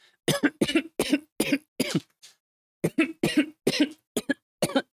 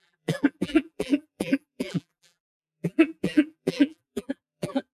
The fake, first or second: second